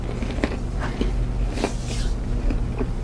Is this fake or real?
real